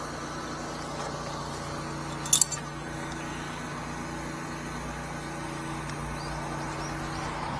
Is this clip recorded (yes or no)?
yes